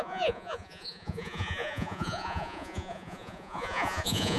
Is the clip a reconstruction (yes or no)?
yes